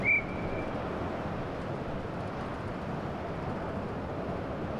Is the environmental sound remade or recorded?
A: recorded